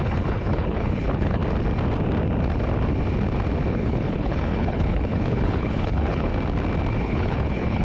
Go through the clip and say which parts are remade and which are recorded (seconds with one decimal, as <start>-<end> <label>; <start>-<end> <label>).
0.0-1.4 remade; 1.4-3.7 recorded; 3.7-6.3 remade; 6.3-7.0 recorded; 7.0-7.8 remade